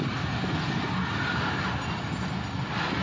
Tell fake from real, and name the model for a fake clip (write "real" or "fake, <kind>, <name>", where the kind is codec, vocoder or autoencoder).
real